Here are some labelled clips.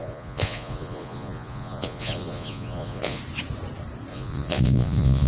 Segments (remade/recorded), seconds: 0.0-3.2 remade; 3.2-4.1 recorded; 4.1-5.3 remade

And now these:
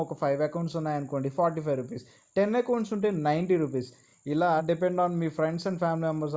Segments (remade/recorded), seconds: 0.0-6.4 recorded

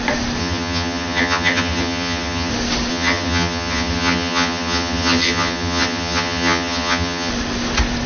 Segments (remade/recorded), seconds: 0.0-0.4 recorded; 0.4-2.5 remade; 2.5-2.9 recorded; 2.9-7.3 remade; 7.3-8.1 recorded

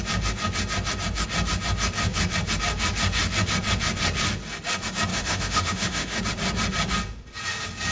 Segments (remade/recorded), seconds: 0.0-5.1 recorded; 5.1-6.2 remade; 6.2-7.9 recorded

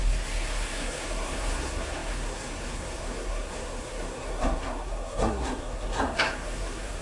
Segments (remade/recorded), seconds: 0.0-7.0 remade

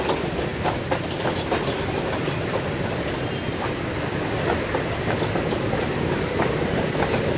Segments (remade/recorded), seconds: 0.0-7.4 recorded